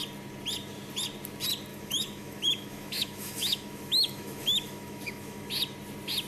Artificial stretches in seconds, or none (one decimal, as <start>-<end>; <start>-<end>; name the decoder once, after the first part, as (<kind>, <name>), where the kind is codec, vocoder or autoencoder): 1.7-5.5 (autoencoder, DAC-VAE)